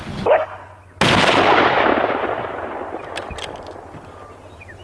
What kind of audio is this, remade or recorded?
recorded